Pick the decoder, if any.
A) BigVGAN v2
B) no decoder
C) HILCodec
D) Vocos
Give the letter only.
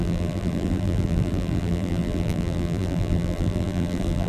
A